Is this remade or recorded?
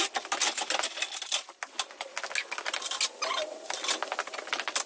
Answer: recorded